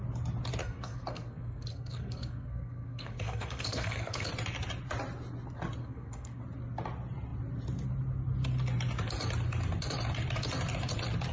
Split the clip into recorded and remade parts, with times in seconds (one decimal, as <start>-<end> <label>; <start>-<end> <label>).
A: 0.0-0.6 recorded; 0.6-4.3 remade; 4.3-5.8 recorded; 5.8-6.4 remade; 6.4-11.3 recorded